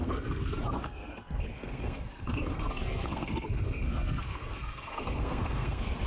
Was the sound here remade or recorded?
remade